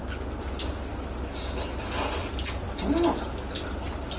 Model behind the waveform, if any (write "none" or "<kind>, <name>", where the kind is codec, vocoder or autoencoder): none